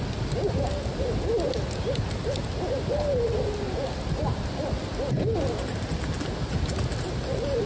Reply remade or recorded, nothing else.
recorded